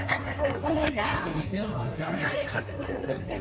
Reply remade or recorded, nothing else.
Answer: remade